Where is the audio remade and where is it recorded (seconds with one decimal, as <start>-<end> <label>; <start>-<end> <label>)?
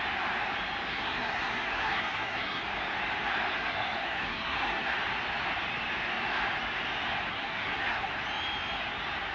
0.0-0.9 recorded; 0.9-2.6 remade; 2.6-3.5 recorded; 3.5-4.9 remade; 4.9-7.3 recorded; 7.3-8.1 remade; 8.1-9.3 recorded